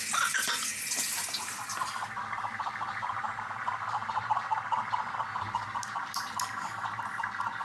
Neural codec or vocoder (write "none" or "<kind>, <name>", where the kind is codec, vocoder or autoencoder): none